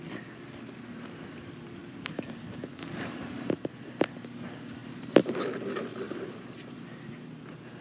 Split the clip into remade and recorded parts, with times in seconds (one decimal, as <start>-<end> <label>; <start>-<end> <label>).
0.0-1.8 recorded; 1.8-2.4 remade; 2.4-2.8 recorded; 2.8-3.5 remade; 3.5-4.8 recorded; 4.8-5.4 remade; 5.4-5.9 recorded; 5.9-6.8 remade; 6.8-7.8 recorded